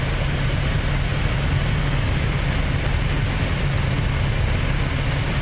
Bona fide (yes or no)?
yes